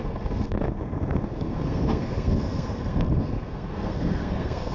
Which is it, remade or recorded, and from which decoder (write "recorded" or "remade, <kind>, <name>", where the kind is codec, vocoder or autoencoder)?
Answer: remade, codec, SNAC